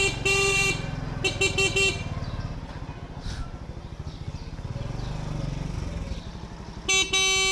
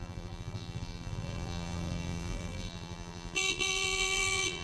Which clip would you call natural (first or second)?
first